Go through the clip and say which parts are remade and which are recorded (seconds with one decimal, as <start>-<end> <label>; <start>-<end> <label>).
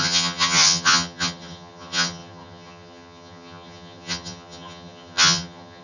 0.0-5.8 remade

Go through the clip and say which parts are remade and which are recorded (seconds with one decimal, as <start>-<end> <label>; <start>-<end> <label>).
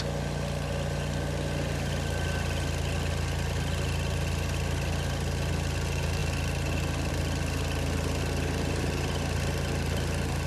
0.0-10.5 recorded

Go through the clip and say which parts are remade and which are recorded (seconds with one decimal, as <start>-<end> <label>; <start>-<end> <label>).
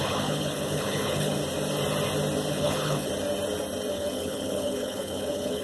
0.0-1.4 remade; 1.4-2.5 recorded; 2.5-3.1 remade; 3.1-3.9 recorded; 3.9-5.6 remade